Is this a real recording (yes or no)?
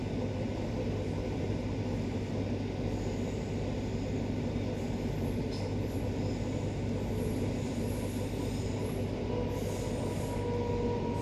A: yes